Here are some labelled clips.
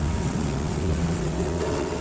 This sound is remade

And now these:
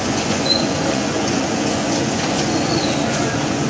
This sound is remade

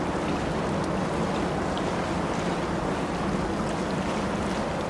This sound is recorded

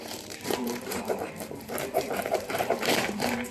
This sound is remade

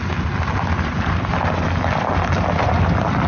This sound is remade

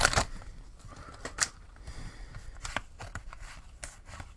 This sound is remade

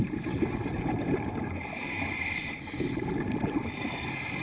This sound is remade